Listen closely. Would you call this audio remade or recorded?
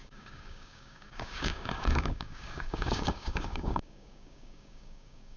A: remade